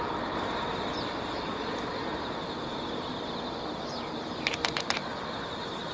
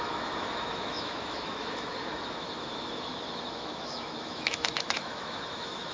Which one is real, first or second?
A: first